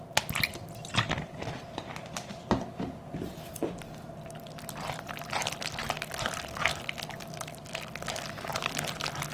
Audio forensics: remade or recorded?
recorded